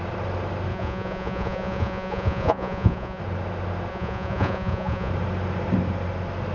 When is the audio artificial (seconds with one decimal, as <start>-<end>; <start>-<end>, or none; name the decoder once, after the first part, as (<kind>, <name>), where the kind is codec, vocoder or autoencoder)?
0.7-3.2 (vocoder, Vocos); 3.9-5.1